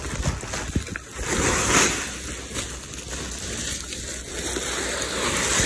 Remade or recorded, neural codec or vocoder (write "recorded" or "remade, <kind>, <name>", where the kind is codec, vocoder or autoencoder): recorded